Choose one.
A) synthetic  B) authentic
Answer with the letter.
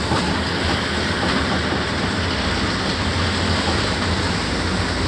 B